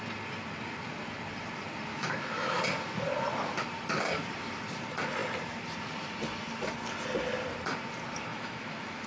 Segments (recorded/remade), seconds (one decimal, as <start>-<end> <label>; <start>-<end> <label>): 0.0-1.9 recorded; 1.9-2.6 remade; 2.6-8.3 recorded; 8.3-9.1 remade